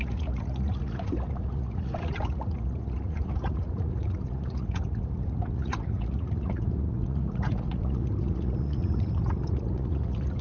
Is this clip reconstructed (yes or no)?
yes